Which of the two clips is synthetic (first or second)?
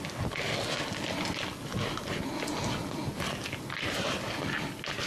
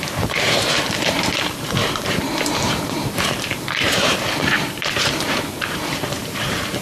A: second